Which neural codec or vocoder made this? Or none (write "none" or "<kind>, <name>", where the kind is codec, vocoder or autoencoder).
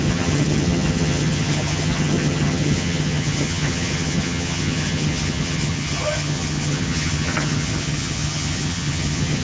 vocoder, HiFi-GAN